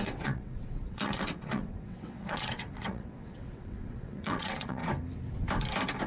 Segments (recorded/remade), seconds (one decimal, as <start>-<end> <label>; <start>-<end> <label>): 0.0-4.8 remade; 4.8-6.1 recorded